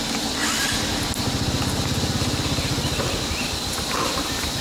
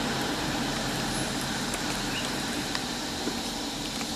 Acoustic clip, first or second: first